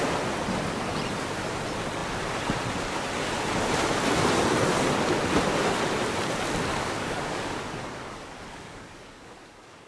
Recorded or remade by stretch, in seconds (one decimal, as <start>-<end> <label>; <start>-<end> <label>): 0.0-6.7 recorded; 6.7-9.9 remade